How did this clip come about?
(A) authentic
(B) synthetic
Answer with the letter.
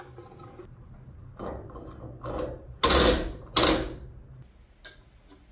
A